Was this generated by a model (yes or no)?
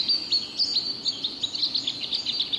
no